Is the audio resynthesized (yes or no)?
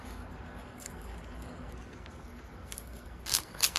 yes